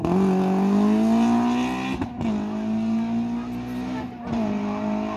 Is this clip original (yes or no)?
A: yes